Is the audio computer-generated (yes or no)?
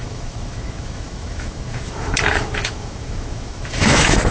yes